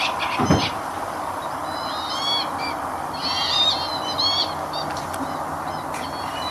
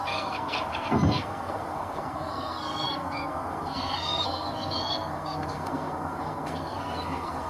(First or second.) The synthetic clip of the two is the second